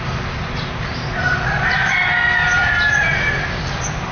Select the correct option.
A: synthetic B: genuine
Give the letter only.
B